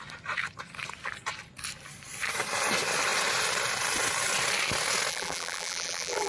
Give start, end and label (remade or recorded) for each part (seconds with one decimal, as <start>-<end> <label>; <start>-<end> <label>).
0.0-5.1 recorded; 5.1-6.3 remade